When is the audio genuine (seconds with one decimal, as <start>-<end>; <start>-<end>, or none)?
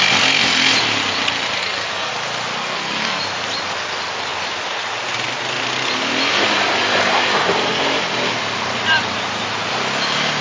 0.0-1.6; 2.1-2.6; 3.2-10.4